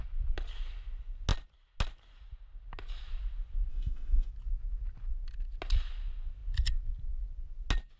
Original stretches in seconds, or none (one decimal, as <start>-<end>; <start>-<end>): 0.0-3.7; 4.3-8.0